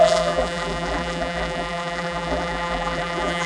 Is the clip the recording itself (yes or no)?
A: no